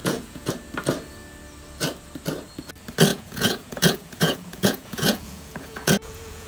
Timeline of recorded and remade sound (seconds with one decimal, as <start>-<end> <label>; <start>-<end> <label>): 0.0-0.5 remade; 0.5-3.1 recorded; 3.1-6.5 remade